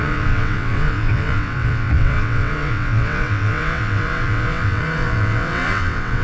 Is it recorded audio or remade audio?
remade